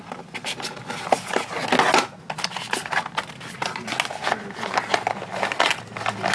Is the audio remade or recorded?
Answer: recorded